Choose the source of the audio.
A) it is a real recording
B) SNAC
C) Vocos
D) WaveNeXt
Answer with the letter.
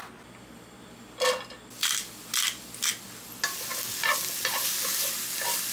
A